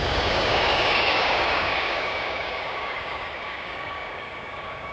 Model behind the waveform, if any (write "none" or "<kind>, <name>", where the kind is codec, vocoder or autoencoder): codec, DAC